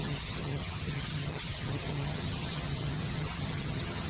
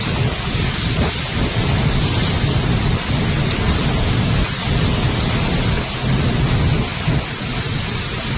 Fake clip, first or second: first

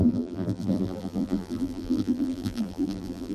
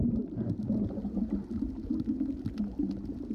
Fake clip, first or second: first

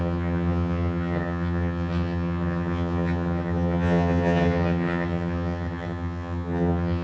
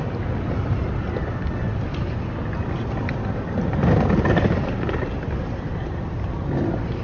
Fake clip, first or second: first